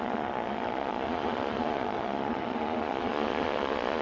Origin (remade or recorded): remade